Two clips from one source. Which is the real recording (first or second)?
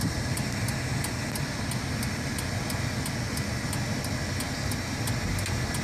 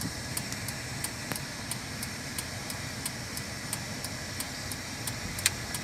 first